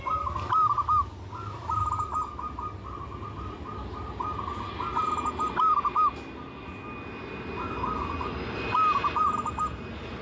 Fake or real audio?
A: real